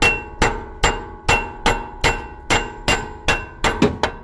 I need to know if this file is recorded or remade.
recorded